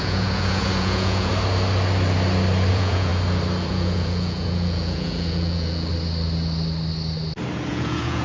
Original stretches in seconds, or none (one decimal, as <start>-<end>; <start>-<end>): 1.3-2.7; 3.1-3.7; 5.9-7.7